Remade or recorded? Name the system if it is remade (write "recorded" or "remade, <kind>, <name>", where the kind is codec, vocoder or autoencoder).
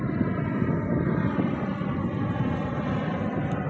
recorded